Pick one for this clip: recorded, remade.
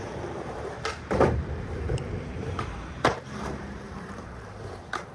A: remade